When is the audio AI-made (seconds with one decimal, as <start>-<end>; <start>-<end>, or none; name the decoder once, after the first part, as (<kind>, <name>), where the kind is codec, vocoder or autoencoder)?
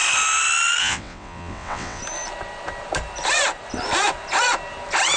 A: 0.8-2.0 (vocoder, WaveNeXt)